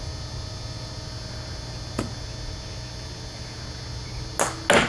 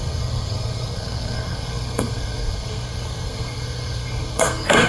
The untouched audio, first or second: first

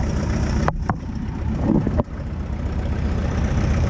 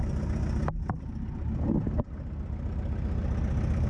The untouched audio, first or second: second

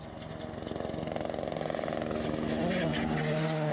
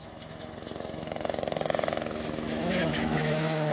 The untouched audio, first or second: first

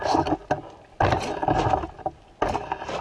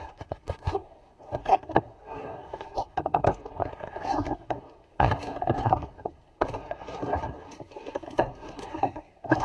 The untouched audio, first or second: first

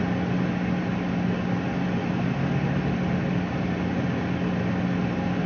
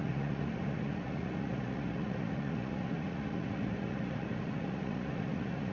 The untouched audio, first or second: first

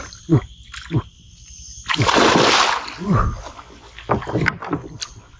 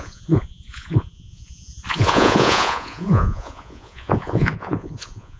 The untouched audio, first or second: first